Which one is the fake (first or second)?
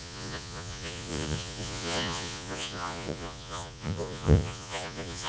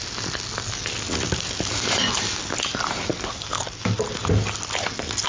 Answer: first